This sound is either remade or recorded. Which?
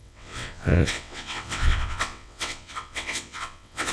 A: remade